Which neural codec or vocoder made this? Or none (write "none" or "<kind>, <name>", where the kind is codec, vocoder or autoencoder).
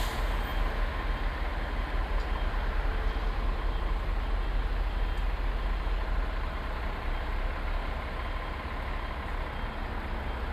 none